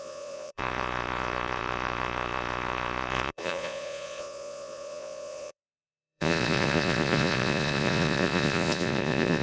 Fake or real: fake